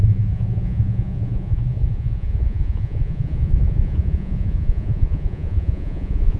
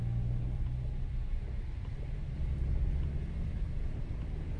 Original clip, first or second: second